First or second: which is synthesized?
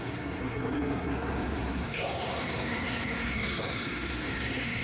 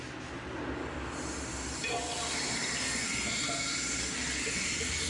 first